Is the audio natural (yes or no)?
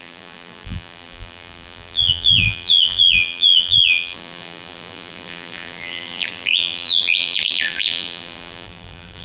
no